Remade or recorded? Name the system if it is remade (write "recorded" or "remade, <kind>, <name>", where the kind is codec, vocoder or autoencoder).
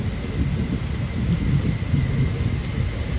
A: recorded